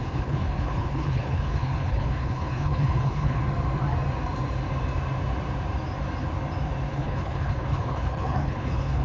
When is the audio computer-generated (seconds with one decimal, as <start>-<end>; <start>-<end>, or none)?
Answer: 0.0-3.4; 6.9-9.0